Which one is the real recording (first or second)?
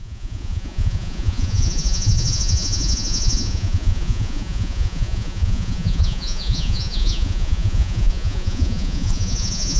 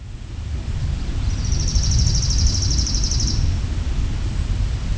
second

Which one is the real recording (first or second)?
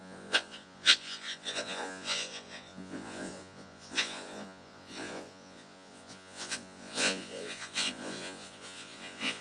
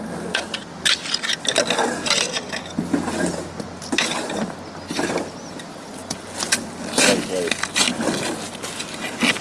second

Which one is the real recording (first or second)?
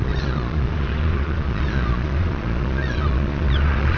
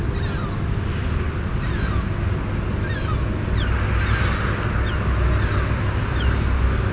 second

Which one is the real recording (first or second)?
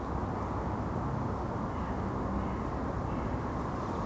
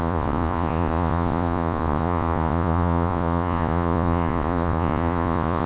first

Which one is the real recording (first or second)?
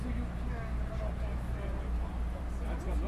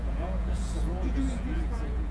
first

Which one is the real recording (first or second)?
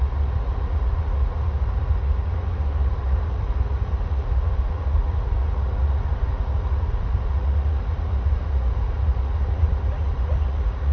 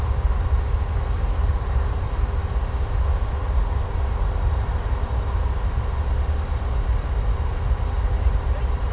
second